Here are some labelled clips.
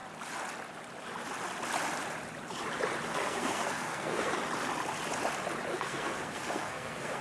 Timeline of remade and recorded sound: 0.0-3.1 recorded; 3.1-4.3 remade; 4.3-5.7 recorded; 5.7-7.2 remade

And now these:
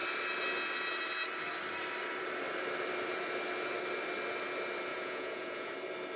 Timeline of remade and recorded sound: 0.0-4.9 recorded; 4.9-5.7 remade; 5.7-6.2 recorded

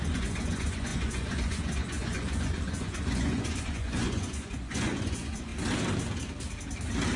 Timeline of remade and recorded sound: 0.0-5.5 remade; 5.5-7.2 recorded

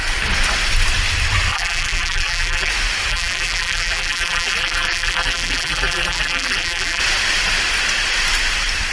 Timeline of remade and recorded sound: 0.0-1.5 recorded; 1.5-2.7 remade; 2.7-3.1 recorded; 3.1-7.0 remade; 7.0-8.9 recorded